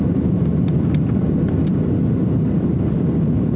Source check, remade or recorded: recorded